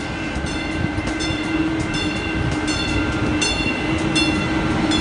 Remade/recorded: recorded